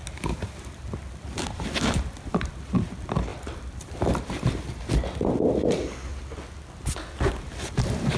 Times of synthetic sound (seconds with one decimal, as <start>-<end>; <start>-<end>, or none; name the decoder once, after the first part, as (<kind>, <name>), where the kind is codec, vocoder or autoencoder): 1.3-6.1 (vocoder, BigVGAN v2); 7.7-8.2